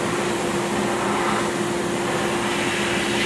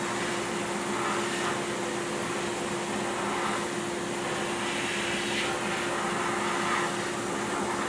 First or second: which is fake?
first